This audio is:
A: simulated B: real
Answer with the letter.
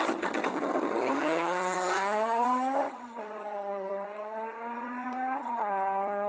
A